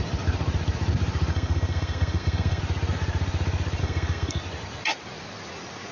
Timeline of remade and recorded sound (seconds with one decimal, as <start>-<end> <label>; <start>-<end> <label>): 0.0-1.3 recorded; 1.3-2.6 remade; 2.6-3.8 recorded; 3.8-4.4 remade; 4.4-5.9 recorded